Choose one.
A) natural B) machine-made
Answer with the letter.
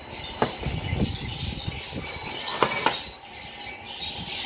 A